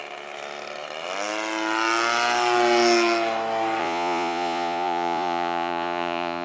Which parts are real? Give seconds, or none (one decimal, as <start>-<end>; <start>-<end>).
0.0-3.8